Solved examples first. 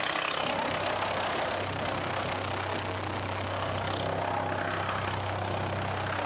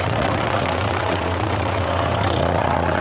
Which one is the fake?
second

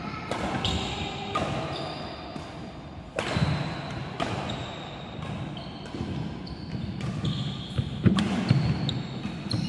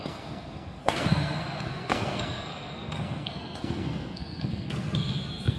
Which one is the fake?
second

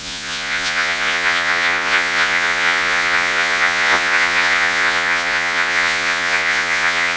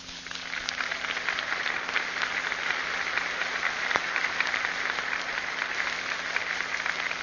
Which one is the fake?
first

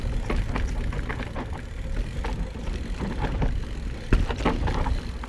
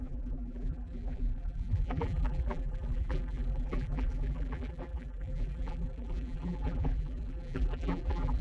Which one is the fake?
second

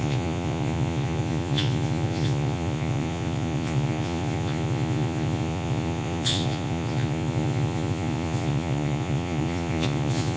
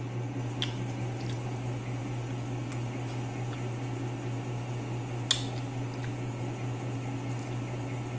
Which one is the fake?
first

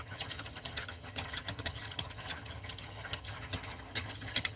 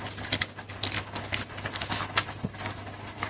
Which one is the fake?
first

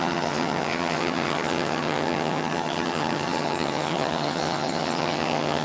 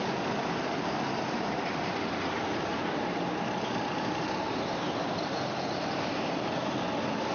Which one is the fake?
first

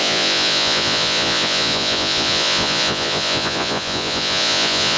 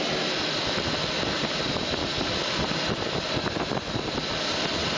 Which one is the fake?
first